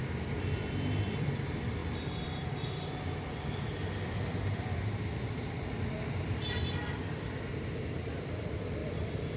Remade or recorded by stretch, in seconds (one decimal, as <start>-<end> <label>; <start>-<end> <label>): 0.0-9.4 remade